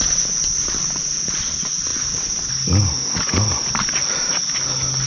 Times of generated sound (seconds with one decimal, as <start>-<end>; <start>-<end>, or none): none